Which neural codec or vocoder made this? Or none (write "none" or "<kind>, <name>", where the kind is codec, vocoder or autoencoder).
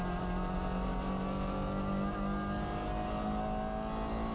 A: none